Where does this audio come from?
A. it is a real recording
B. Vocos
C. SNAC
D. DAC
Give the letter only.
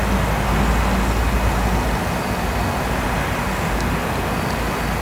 A